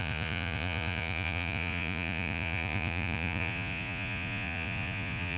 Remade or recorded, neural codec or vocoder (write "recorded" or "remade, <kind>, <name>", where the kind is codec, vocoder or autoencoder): remade, vocoder, Vocos